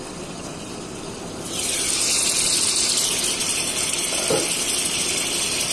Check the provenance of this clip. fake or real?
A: real